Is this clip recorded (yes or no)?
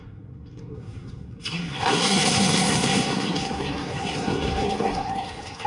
no